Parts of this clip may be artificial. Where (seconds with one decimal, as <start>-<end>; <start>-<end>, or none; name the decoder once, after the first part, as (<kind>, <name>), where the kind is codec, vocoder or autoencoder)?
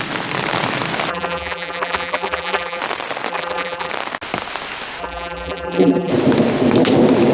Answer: 1.1-2.8 (vocoder, BigVGAN v2); 3.3-3.9; 5.0-6.1